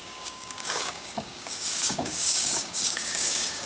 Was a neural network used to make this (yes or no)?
yes